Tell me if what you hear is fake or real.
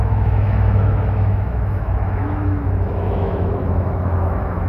fake